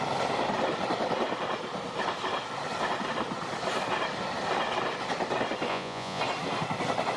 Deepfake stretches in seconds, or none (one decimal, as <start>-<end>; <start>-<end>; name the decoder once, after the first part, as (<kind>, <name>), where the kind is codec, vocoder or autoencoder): 5.7-6.2 (vocoder, Vocos)